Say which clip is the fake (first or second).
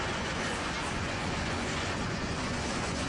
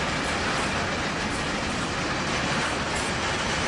first